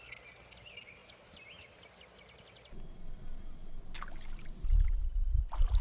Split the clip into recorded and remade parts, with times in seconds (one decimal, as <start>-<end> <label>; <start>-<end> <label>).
0.0-5.8 recorded

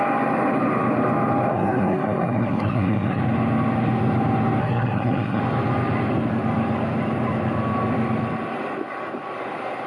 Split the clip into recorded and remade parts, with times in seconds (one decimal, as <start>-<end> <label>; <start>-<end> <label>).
0.0-1.5 recorded; 1.5-3.2 remade; 3.2-4.6 recorded; 4.6-5.4 remade; 5.4-9.9 recorded

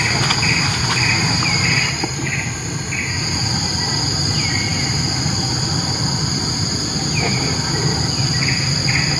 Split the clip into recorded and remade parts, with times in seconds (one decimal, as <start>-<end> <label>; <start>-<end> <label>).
0.0-9.2 recorded

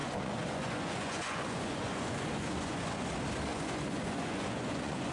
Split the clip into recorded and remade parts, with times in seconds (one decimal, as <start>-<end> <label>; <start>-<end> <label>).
0.0-3.1 remade; 3.1-3.5 recorded; 3.5-5.1 remade

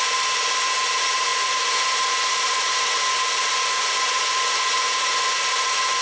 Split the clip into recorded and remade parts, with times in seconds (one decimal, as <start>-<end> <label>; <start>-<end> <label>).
0.0-6.0 recorded

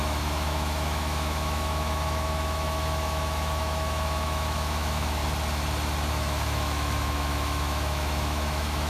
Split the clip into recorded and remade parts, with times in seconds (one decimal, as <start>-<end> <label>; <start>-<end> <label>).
0.0-5.2 remade; 5.2-6.1 recorded; 6.1-8.9 remade

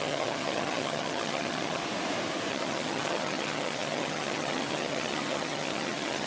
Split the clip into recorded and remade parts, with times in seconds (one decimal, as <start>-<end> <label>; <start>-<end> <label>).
0.0-1.8 remade; 1.8-2.5 recorded; 2.5-6.3 remade

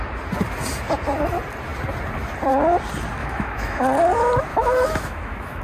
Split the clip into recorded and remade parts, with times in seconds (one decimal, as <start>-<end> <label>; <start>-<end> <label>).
0.0-3.2 recorded; 3.2-3.8 remade; 3.8-4.5 recorded; 4.5-5.6 remade